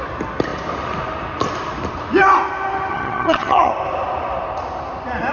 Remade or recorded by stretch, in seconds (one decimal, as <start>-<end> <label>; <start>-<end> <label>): 0.0-2.9 recorded; 2.9-3.7 remade; 3.7-5.3 recorded